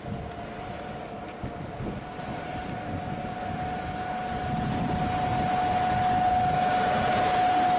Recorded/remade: recorded